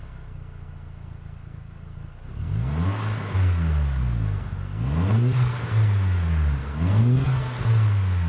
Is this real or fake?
fake